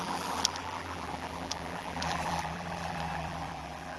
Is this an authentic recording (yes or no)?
no